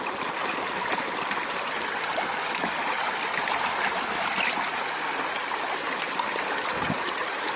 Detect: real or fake real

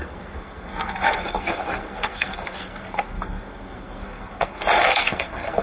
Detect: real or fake fake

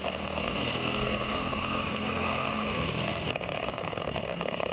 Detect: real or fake fake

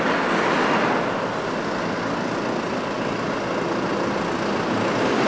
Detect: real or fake real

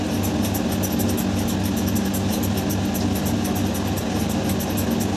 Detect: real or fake real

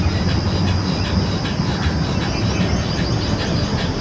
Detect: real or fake real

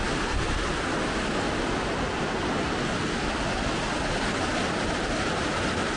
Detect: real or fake real